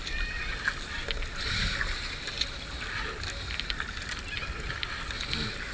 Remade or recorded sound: recorded